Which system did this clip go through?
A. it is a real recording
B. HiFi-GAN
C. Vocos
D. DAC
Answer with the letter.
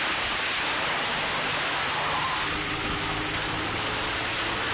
A